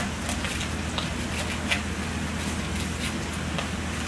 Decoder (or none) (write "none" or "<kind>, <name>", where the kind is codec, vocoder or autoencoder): none